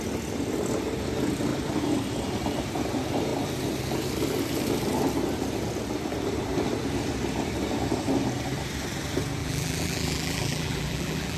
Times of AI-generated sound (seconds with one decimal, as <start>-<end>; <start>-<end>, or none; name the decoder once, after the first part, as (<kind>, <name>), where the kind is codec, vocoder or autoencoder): 9.4-11.4 (vocoder, BigVGAN v2)

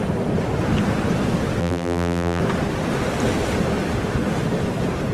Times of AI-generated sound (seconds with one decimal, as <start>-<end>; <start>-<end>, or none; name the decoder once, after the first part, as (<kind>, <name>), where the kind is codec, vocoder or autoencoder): 1.6-2.4 (vocoder, BigVGAN v2)

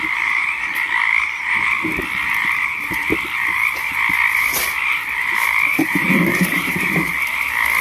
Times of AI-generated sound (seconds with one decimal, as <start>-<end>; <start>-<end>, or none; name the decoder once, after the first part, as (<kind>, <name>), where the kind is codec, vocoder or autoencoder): 5.7-7.0 (vocoder, BigVGAN v2)

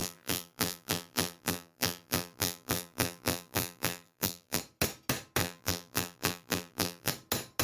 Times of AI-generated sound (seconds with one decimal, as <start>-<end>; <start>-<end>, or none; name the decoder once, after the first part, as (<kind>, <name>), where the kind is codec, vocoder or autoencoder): 0.0-4.6 (vocoder, BigVGAN v2); 5.4-7.1

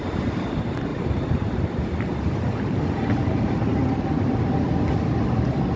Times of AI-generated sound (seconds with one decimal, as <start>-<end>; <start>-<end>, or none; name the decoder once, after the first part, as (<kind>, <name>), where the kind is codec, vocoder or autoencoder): 0.9-4.4 (vocoder, BigVGAN v2)